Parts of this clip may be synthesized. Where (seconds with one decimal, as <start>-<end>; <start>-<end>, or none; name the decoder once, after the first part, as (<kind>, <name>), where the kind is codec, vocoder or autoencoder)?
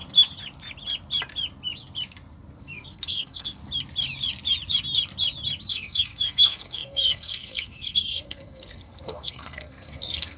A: 2.6-3.6 (codec, SNAC); 5.7-10.4